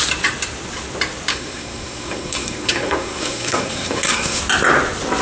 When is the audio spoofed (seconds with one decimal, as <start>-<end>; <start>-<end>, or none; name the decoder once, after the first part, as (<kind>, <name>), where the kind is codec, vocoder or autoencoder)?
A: 1.3-4.4 (codec, SNAC)